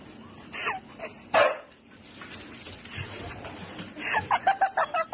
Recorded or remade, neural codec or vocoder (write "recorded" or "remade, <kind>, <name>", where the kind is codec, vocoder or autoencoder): recorded